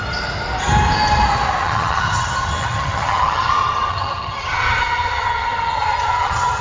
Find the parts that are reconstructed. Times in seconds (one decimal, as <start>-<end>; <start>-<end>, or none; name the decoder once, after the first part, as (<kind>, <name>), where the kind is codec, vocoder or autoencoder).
1.6-3.5 (vocoder, HiFi-GAN); 3.9-6.6